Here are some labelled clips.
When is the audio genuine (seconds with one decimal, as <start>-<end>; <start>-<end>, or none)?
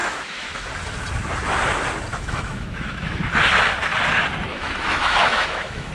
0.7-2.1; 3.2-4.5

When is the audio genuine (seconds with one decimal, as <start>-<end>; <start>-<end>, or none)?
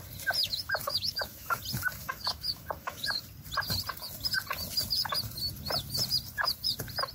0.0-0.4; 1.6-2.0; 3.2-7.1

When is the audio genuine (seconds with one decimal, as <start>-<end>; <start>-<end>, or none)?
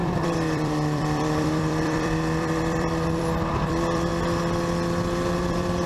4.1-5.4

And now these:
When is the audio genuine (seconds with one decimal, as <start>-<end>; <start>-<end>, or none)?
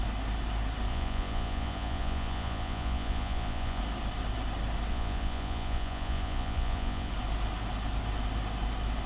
0.0-0.9; 3.8-4.9; 7.1-9.1